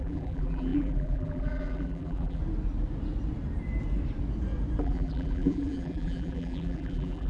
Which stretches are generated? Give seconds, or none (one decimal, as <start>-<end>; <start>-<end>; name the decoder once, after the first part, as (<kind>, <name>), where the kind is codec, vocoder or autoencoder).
0.0-2.4 (vocoder, BigVGAN v2); 4.8-7.3